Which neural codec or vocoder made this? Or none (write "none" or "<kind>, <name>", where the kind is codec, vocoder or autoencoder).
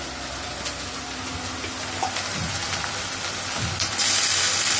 none